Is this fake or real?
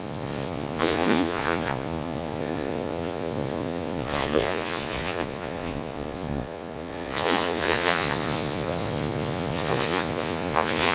fake